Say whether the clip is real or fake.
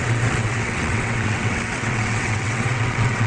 fake